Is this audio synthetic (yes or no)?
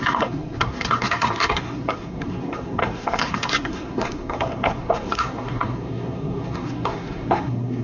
yes